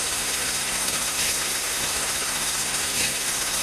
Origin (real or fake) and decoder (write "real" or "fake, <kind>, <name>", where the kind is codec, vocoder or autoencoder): fake, codec, SNAC